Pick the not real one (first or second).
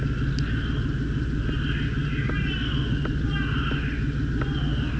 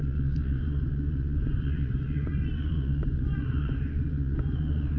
second